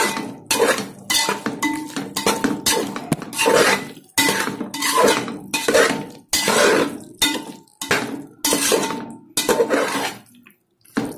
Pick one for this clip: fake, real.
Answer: real